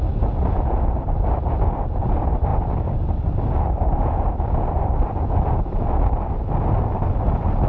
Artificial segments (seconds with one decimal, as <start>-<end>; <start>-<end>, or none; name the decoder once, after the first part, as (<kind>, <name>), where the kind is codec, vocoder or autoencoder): none